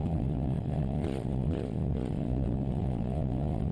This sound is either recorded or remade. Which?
remade